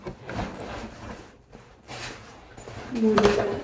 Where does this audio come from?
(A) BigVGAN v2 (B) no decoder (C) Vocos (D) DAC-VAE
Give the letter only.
A